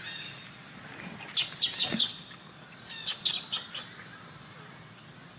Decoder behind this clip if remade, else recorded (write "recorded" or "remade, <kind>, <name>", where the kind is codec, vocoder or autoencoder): recorded